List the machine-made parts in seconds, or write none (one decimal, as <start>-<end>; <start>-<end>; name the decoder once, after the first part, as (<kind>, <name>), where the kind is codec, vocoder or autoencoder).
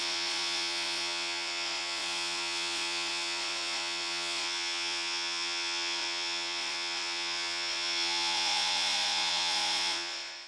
0.0-10.5 (vocoder, Vocos)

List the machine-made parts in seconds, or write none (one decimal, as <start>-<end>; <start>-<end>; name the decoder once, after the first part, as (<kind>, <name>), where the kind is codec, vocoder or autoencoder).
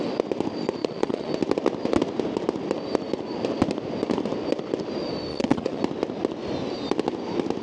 0.8-1.3 (vocoder, Vocos); 5.3-5.8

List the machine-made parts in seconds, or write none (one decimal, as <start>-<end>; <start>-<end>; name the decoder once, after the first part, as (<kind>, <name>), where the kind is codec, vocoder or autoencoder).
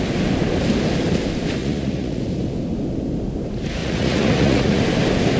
1.6-2.2 (vocoder, Vocos); 3.8-4.8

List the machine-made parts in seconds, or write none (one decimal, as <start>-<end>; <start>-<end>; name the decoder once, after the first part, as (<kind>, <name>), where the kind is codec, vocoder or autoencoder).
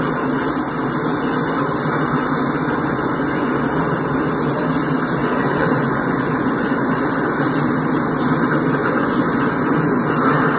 2.6-3.5 (vocoder, Vocos); 5.2-7.0; 8.8-10.0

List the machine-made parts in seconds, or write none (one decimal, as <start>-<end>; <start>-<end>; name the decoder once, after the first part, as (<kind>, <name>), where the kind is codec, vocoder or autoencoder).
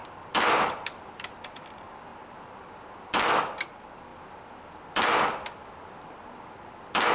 none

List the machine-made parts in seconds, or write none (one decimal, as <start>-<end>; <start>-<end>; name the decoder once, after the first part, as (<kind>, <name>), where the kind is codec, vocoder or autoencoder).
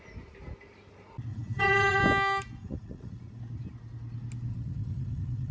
1.3-2.0 (vocoder, Vocos); 2.6-3.4; 4.5-5.5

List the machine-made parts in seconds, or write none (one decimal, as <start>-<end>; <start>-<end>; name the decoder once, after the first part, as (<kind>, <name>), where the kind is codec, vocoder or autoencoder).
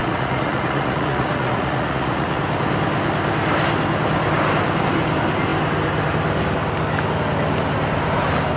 0.0-2.4 (vocoder, Vocos)